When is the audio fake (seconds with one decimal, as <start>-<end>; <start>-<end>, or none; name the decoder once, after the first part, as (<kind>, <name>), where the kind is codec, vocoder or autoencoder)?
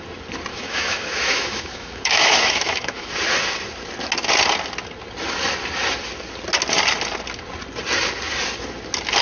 0.5-3.1 (autoencoder, DAC-VAE)